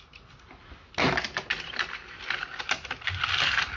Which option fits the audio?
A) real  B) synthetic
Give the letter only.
A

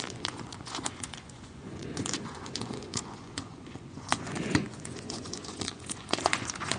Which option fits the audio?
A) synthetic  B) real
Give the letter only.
A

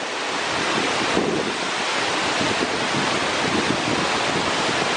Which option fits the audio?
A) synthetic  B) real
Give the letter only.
B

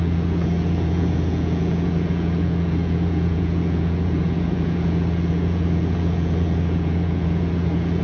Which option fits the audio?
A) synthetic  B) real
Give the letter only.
A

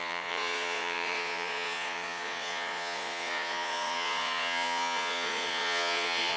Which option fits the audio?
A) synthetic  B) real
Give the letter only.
A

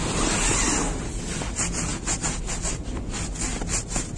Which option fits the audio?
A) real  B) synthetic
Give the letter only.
A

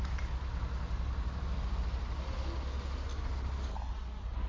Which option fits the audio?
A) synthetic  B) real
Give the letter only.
B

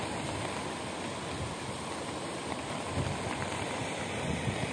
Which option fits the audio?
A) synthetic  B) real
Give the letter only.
B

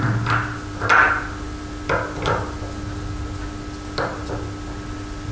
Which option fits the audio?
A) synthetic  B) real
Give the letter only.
B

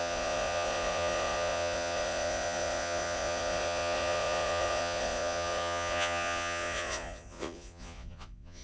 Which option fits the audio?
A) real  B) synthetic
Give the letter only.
B